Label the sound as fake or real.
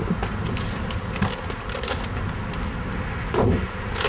real